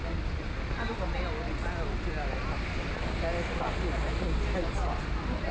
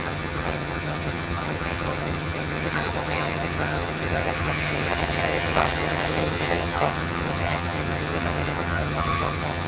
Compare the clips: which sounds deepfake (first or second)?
second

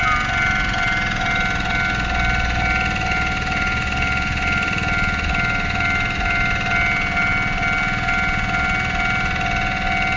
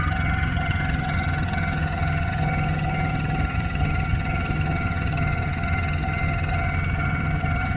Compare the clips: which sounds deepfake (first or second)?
second